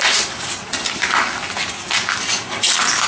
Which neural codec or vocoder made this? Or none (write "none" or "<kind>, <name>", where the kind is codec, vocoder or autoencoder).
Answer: none